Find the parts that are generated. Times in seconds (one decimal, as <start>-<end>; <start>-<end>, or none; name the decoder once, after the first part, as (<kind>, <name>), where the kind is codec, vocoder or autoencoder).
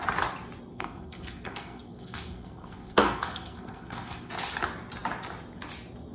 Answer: 0.7-4.3 (codec, SNAC)